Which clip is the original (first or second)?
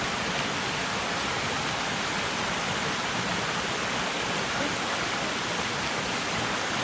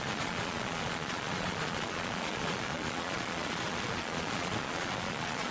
first